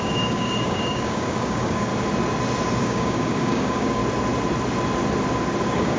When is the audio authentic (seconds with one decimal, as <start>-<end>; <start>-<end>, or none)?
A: 1.9-2.8; 4.0-5.6